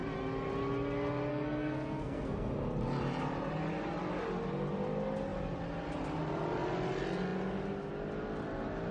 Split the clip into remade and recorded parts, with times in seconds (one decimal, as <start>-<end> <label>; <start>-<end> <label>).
0.0-1.3 recorded; 1.3-2.5 remade; 2.5-8.9 recorded